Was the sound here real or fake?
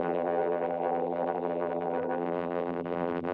fake